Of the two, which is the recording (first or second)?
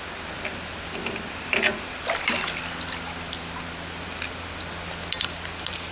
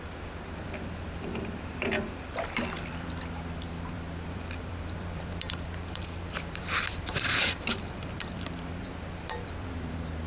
first